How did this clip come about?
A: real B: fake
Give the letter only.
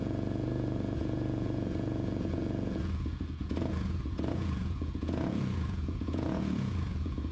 B